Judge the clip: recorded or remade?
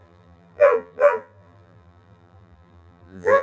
remade